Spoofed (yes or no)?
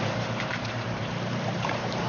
yes